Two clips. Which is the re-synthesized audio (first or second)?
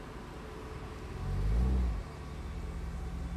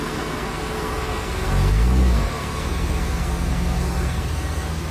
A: second